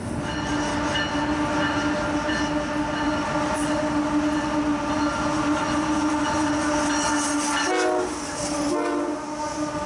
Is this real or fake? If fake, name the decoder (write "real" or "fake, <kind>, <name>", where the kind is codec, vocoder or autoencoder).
real